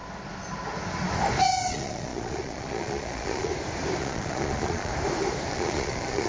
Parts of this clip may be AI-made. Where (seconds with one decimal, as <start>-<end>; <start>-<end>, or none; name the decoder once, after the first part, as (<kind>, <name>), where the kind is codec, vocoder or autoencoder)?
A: 1.7-3.5 (vocoder, Vocos); 4.0-4.9; 5.5-6.3